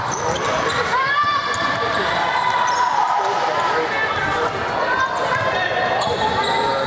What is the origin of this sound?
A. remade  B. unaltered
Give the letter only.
A